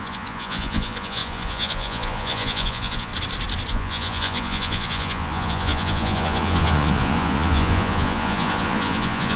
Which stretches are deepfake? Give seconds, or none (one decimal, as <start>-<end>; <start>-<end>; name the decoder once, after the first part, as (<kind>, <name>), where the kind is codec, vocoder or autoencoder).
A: 0.0-3.1 (vocoder, Vocos); 3.7-9.4